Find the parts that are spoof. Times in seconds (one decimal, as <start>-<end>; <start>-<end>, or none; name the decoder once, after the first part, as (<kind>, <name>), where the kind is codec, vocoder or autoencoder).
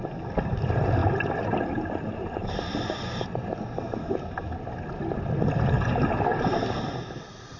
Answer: none